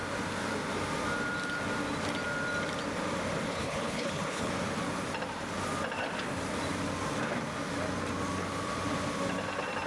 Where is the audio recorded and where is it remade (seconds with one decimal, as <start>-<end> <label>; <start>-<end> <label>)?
0.0-3.5 recorded; 3.5-4.5 remade; 4.5-9.9 recorded